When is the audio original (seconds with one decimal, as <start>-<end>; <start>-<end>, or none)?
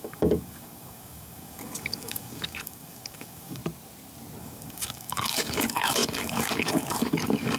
3.6-4.4